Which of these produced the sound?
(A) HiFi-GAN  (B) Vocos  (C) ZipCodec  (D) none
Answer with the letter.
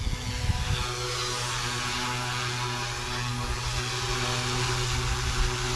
D